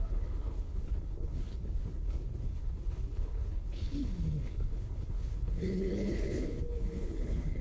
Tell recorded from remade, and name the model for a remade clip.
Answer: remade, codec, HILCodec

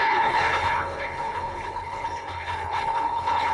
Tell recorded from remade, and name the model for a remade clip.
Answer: remade, codec, HILCodec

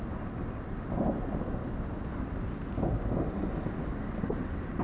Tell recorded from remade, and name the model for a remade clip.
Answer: recorded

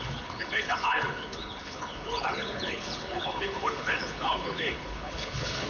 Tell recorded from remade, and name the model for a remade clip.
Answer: remade, codec, HILCodec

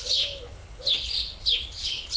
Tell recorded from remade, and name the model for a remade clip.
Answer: remade, codec, HILCodec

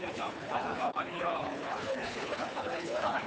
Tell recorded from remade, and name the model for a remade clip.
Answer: remade, codec, HILCodec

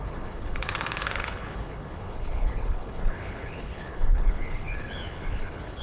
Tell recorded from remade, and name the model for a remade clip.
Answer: remade, codec, HILCodec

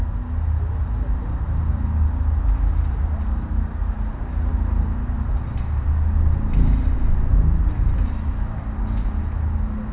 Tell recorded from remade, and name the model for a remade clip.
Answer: recorded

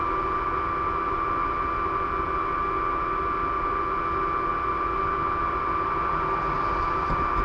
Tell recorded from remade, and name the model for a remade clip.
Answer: recorded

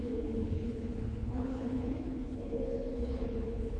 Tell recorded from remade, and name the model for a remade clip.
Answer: remade, codec, HILCodec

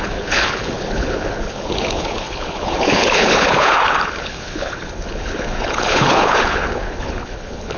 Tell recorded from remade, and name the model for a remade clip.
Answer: remade, codec, HILCodec